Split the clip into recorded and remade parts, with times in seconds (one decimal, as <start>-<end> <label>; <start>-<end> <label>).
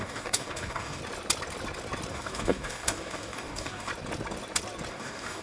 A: 0.0-1.0 remade; 1.0-2.1 recorded; 2.1-3.9 remade; 3.9-4.9 recorded; 4.9-5.4 remade